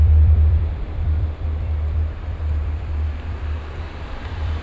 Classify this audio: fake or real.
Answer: fake